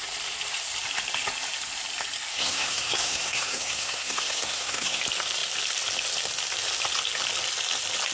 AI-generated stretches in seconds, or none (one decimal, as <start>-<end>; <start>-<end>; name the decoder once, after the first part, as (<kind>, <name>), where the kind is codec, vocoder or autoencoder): 2.3-5.0 (codec, SNAC)